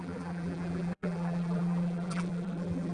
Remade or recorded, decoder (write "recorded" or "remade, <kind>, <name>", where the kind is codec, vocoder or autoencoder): remade, vocoder, BigVGAN v2